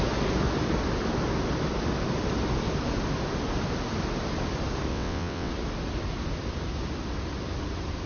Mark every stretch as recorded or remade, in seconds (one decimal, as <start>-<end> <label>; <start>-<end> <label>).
0.0-4.9 recorded; 4.9-5.5 remade; 5.5-8.1 recorded